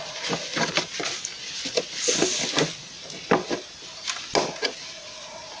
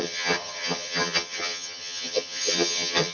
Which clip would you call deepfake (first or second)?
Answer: second